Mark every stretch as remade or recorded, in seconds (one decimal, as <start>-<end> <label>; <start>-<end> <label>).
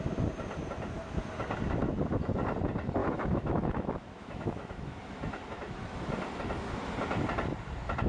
0.0-1.8 recorded; 1.8-2.4 remade; 2.4-3.0 recorded; 3.0-6.1 remade; 6.1-8.1 recorded